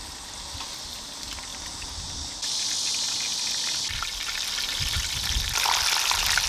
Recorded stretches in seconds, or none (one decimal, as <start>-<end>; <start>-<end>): 0.0-1.5; 2.3-6.5